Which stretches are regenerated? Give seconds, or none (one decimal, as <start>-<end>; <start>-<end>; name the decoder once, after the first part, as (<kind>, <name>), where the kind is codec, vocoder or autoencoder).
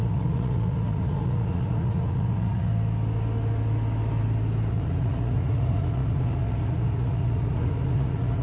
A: 0.0-2.7 (vocoder, Vocos); 4.7-8.4